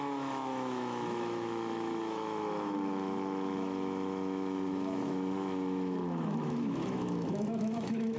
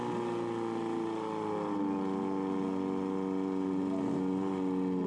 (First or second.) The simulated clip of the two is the first